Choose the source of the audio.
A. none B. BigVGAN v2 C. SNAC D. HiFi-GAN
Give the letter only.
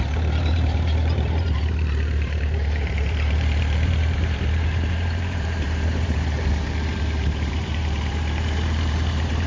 B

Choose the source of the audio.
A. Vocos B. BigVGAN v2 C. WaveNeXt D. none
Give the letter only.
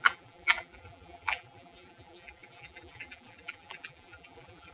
B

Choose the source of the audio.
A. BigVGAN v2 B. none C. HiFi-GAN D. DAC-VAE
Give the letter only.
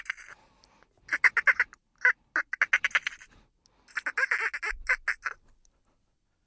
B